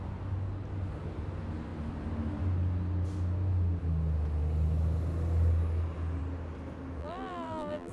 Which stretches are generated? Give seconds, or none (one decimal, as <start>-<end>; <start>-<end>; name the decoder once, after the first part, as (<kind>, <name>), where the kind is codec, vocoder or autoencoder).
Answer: 7.0-7.9 (vocoder, BigVGAN v2)